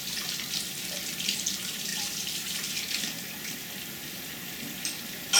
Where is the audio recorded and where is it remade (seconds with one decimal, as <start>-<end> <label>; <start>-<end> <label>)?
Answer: 0.0-5.4 recorded